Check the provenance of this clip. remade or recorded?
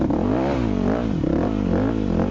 recorded